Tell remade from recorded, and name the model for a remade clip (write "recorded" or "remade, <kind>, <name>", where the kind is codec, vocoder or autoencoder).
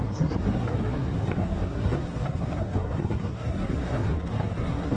remade, codec, SNAC